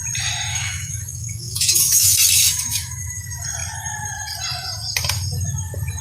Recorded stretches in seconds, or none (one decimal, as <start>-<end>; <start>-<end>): 0.0-0.5; 3.2-6.0